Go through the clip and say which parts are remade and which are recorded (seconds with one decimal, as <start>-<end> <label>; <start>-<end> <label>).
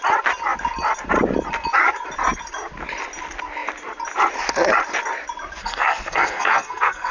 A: 0.0-5.6 recorded; 5.6-7.1 remade